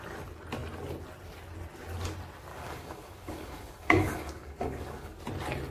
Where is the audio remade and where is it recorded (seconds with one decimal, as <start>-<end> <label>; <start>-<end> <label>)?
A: 0.0-2.5 recorded; 2.5-5.2 remade; 5.2-5.7 recorded